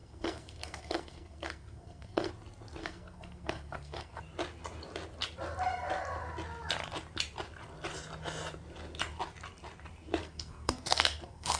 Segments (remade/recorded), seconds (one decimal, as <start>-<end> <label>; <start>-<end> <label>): 0.0-2.3 remade; 2.3-2.8 recorded; 2.8-4.2 remade; 4.2-10.2 recorded; 10.2-11.6 remade